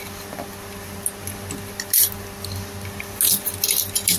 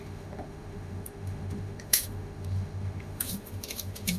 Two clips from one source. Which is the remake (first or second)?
second